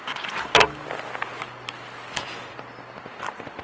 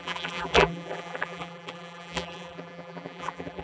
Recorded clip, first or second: first